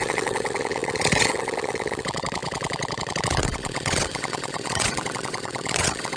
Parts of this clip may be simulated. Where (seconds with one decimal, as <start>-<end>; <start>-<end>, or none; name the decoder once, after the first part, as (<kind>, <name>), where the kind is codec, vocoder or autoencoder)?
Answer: 0.0-6.2 (vocoder, WaveNeXt)